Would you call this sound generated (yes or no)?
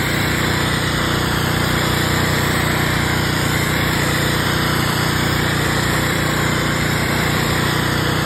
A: yes